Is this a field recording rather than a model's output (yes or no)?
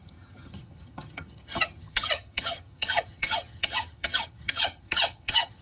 no